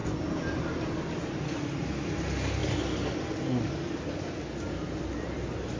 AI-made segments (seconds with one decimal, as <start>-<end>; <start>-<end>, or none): none